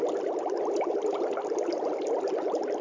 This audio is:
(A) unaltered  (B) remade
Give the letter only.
A